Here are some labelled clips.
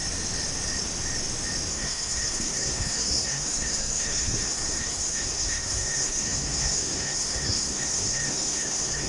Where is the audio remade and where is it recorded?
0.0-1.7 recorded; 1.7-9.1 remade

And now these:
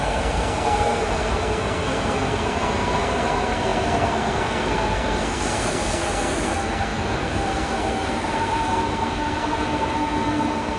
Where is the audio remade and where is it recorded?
0.0-10.8 remade

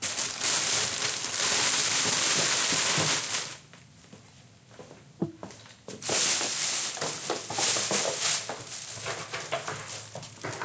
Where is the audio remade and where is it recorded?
0.0-10.6 recorded